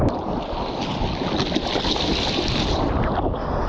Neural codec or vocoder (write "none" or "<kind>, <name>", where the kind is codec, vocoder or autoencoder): none